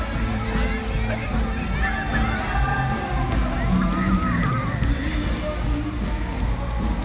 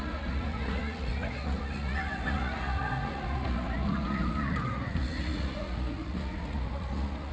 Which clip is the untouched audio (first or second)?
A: first